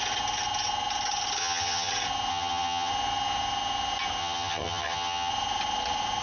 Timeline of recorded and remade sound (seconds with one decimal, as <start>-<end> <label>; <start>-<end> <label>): 0.0-1.4 recorded; 1.4-1.9 remade; 1.9-2.3 recorded; 2.3-2.9 remade; 2.9-4.2 recorded; 4.2-5.3 remade; 5.3-6.2 recorded